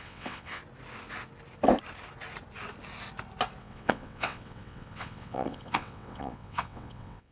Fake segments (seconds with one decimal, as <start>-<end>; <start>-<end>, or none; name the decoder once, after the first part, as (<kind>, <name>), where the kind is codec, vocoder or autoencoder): 0.0-0.6 (vocoder, WaveNeXt); 3.6-7.3